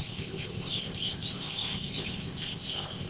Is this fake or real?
fake